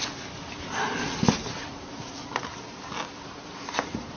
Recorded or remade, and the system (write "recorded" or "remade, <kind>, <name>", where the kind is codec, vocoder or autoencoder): recorded